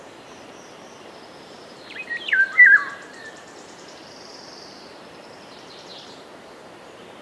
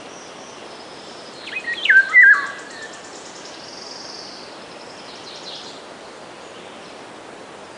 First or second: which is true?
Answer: second